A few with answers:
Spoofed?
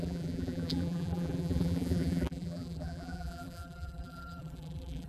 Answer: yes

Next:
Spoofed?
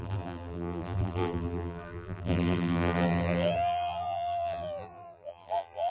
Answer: yes